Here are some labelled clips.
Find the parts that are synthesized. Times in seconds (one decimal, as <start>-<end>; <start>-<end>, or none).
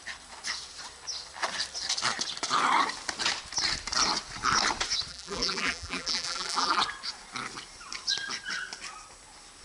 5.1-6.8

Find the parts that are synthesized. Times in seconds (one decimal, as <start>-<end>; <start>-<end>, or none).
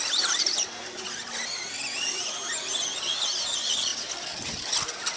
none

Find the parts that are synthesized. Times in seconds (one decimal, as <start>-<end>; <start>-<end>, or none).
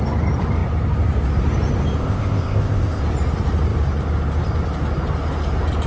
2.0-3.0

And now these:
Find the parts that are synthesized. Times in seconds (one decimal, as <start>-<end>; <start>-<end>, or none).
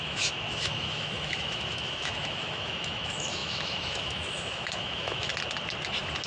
0.0-5.3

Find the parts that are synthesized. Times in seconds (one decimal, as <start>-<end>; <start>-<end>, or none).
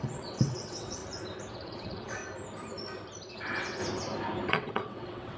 0.0-1.0; 1.5-2.2; 3.3-3.8; 4.5-5.4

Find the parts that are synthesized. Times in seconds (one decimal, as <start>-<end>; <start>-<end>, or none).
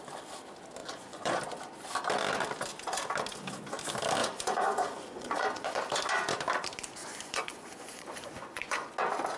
0.8-1.4; 4.2-5.8; 7.0-8.9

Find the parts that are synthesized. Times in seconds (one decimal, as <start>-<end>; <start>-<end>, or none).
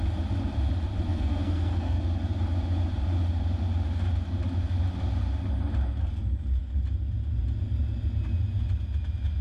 1.1-2.0